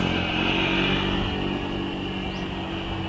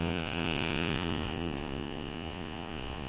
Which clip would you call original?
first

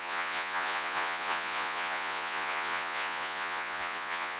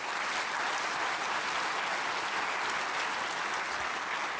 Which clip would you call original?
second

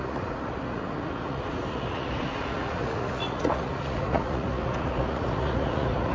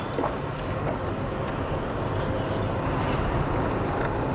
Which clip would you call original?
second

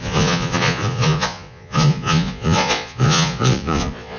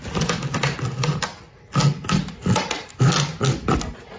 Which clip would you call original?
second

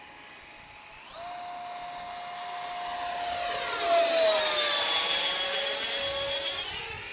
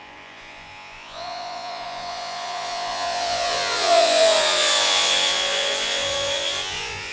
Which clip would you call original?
first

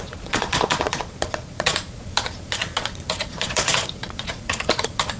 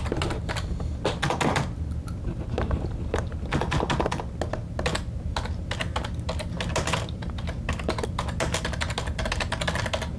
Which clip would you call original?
second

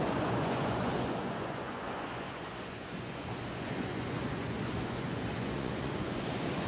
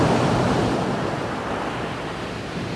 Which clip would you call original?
second